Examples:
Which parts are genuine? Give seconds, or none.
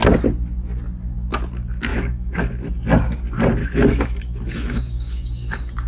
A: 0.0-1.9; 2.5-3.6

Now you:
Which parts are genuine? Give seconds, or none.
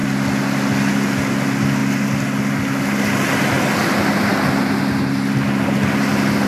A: 0.0-6.5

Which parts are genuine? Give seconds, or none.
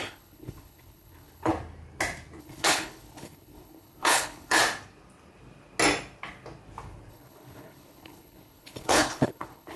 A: 1.5-2.4; 4.6-7.1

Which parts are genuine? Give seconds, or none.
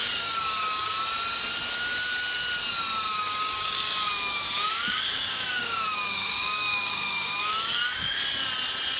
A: 1.0-3.1; 8.2-9.0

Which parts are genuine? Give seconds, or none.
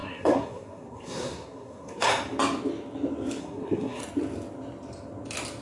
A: 2.1-3.4; 4.0-5.6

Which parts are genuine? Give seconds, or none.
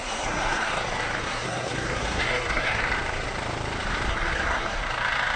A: 0.7-1.2; 2.8-4.1; 4.8-5.4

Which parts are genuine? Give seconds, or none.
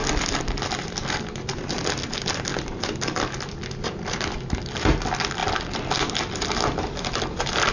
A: 0.0-7.7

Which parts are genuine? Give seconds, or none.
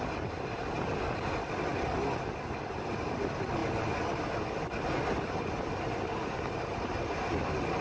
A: 0.0-7.8